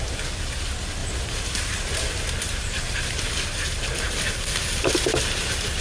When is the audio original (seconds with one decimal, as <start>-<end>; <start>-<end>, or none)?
0.0-1.0; 2.0-2.5; 3.9-5.8